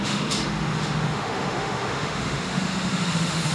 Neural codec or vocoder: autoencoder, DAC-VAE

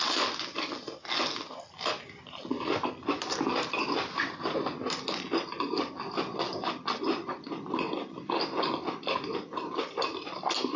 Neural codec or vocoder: none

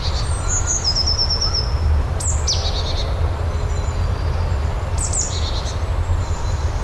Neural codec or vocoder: none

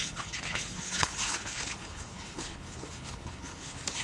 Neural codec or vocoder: codec, HILCodec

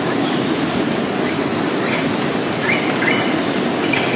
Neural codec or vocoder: none